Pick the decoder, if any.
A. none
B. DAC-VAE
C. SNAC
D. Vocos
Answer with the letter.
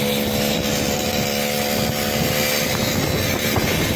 A